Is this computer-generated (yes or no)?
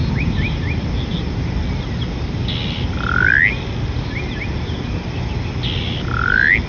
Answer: no